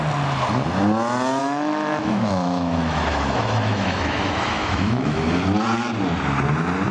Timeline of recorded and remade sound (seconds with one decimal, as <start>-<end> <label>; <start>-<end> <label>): 0.0-1.4 recorded; 1.4-5.2 remade; 5.2-6.9 recorded